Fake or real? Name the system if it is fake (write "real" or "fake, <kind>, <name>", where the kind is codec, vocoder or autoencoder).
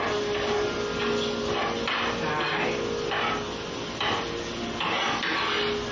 real